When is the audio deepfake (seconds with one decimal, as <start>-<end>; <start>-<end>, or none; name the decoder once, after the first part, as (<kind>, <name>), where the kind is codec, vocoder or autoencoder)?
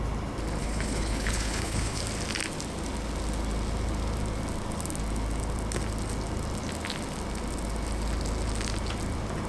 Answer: 0.6-2.0 (codec, HILCodec)